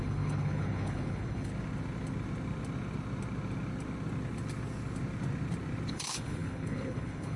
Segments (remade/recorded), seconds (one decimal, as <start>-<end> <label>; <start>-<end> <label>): 0.0-1.5 remade; 1.5-5.9 recorded; 5.9-7.4 remade